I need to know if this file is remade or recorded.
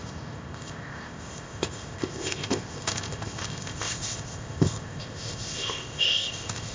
remade